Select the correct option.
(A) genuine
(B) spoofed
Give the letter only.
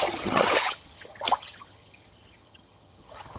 B